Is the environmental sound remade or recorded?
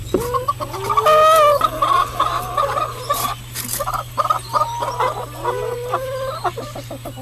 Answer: recorded